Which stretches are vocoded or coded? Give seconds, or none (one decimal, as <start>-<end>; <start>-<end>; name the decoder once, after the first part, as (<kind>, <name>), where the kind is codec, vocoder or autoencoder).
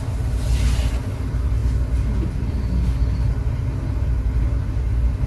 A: none